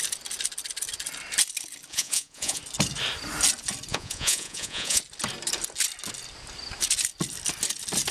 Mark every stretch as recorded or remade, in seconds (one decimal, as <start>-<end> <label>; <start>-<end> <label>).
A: 0.0-1.9 recorded; 1.9-2.6 remade; 2.6-3.9 recorded; 3.9-5.0 remade; 5.0-8.1 recorded